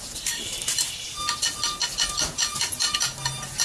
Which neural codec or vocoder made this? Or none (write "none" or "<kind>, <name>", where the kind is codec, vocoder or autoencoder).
none